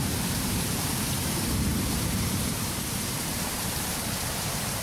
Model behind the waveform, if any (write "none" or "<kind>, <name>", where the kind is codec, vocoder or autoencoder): vocoder, BigVGAN v2